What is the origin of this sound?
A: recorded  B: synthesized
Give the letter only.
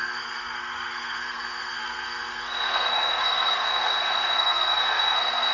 B